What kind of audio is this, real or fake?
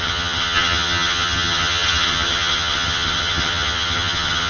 fake